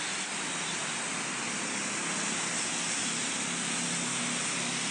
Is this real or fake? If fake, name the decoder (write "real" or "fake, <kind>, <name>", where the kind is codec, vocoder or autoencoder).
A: real